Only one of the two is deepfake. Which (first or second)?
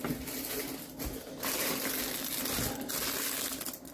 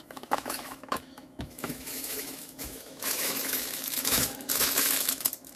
second